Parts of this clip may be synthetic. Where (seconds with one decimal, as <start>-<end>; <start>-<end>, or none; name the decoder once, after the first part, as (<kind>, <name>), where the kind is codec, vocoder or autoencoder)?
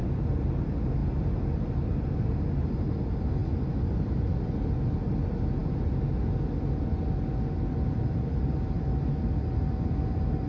3.4-4.6 (vocoder, BigVGAN v2); 5.6-6.1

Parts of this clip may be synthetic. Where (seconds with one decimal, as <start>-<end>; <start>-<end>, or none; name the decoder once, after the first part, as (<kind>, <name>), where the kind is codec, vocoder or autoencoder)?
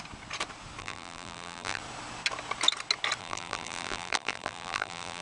0.8-1.8 (vocoder, BigVGAN v2); 3.2-5.2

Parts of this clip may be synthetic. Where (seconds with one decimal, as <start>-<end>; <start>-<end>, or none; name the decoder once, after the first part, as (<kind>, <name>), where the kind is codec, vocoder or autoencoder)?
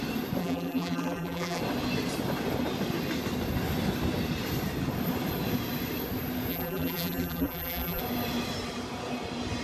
0.4-1.6 (vocoder, BigVGAN v2); 6.5-8.0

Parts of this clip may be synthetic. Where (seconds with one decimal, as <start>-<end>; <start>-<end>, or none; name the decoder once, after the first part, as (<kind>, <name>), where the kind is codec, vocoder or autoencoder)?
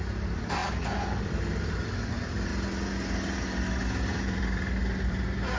0.0-0.6 (vocoder, BigVGAN v2); 1.3-2.5; 4.1-5.6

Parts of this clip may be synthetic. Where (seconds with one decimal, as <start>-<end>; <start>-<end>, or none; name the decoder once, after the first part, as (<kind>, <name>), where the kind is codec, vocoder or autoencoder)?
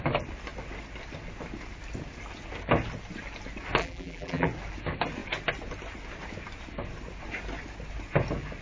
3.8-4.5 (vocoder, BigVGAN v2)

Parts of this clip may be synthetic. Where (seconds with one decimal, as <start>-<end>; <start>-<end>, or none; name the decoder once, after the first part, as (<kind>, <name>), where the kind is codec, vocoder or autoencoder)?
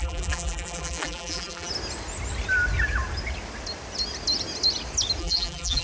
0.0-1.7 (vocoder, BigVGAN v2); 5.2-5.8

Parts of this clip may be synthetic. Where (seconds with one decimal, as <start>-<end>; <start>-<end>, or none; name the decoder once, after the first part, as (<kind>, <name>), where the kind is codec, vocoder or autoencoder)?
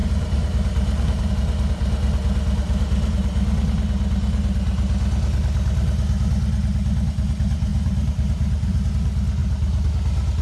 0.0-1.3 (vocoder, BigVGAN v2); 7.7-8.9; 9.4-9.9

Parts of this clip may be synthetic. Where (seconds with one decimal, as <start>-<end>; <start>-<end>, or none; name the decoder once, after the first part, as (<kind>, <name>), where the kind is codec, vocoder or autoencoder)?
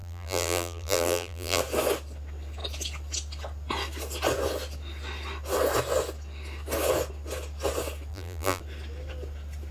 0.0-1.6 (vocoder, BigVGAN v2); 8.1-8.6